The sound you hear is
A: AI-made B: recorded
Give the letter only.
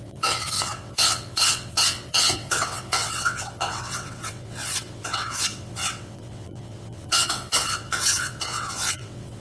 A